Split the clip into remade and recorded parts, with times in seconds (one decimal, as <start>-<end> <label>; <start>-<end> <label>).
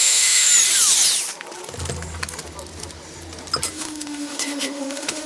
0.0-0.5 remade; 0.5-3.7 recorded; 3.7-5.3 remade